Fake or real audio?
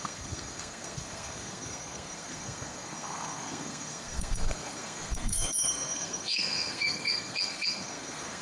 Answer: fake